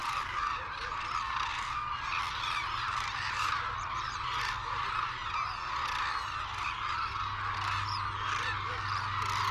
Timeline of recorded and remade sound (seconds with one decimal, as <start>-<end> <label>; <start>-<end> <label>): 0.0-2.6 recorded; 2.6-4.2 remade; 4.2-9.5 recorded